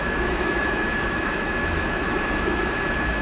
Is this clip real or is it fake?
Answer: fake